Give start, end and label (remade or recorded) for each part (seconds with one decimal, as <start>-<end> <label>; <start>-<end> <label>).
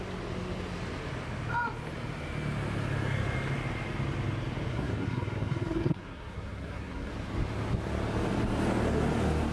0.0-4.7 recorded; 4.7-7.1 remade; 7.1-9.5 recorded